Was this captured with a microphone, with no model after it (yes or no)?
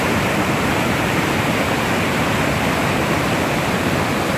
yes